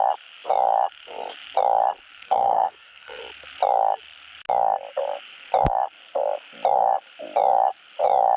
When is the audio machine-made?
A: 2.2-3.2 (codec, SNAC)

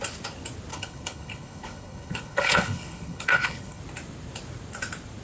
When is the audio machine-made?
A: 0.7-3.8 (codec, HILCodec)

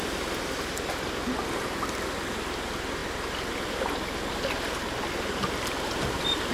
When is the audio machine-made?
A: none

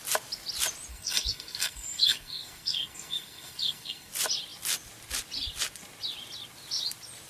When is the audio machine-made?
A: 0.9-4.1 (codec, SNAC)

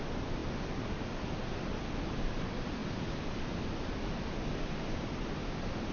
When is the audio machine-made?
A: none